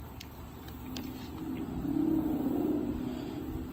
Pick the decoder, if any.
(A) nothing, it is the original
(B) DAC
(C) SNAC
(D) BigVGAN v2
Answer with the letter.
D